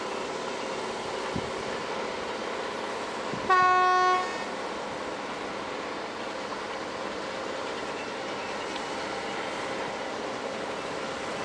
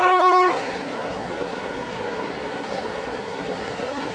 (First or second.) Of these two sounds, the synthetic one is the second